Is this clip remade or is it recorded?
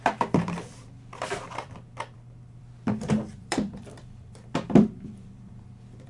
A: remade